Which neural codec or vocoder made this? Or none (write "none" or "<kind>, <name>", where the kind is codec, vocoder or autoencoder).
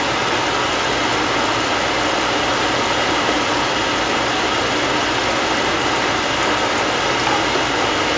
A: none